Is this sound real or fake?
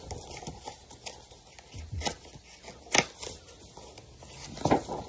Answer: real